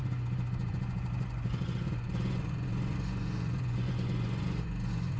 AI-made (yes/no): yes